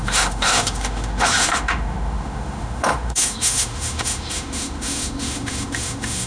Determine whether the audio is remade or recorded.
remade